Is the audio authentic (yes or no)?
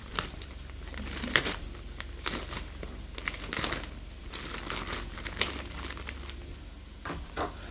yes